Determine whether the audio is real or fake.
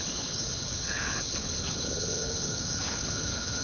fake